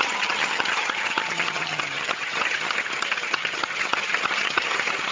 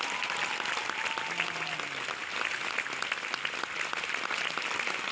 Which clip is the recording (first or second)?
second